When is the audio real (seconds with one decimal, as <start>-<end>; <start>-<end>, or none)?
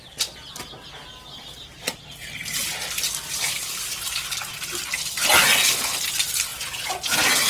0.0-6.5